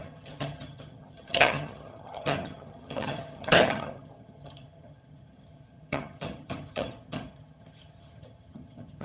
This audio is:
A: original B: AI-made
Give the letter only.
B